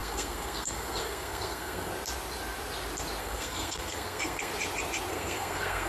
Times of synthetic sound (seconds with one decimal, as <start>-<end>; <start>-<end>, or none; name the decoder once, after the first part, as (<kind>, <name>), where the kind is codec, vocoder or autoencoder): 0.0-1.9 (codec, SNAC); 3.2-4.5; 5.1-5.9